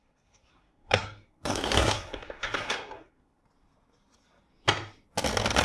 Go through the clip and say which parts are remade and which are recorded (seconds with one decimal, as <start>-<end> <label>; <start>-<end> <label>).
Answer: 0.0-3.4 remade; 3.4-5.6 recorded